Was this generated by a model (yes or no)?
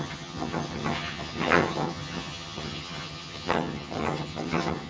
yes